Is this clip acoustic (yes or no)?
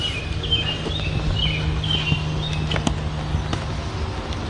yes